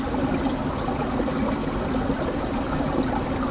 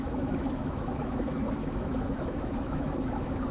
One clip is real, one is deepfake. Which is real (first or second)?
first